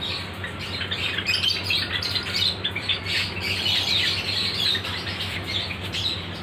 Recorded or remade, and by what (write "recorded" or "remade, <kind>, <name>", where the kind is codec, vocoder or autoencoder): recorded